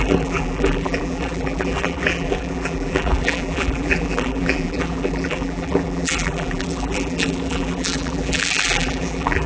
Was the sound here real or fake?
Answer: fake